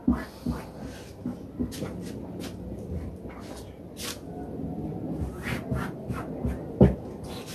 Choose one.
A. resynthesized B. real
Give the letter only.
B